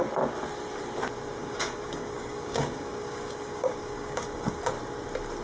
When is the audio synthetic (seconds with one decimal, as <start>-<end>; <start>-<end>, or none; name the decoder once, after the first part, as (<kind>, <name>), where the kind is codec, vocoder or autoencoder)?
1.4-4.6 (codec, DAC)